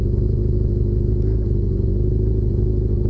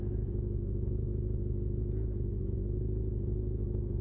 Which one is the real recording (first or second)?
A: first